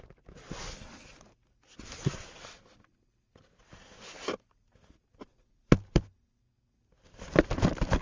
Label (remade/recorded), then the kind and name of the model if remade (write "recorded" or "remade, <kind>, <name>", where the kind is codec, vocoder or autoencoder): recorded